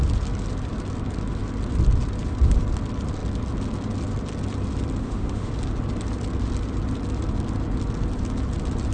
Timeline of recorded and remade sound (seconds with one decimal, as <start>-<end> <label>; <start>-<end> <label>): 0.0-5.0 recorded; 5.0-5.5 remade; 5.5-8.9 recorded